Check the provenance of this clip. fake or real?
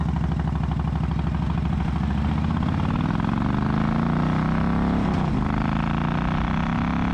real